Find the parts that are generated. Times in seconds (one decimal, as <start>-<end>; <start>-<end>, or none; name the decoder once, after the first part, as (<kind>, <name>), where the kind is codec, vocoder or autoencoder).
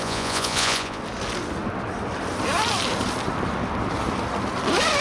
0.0-1.0 (vocoder, Vocos)